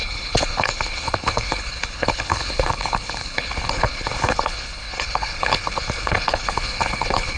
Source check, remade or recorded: remade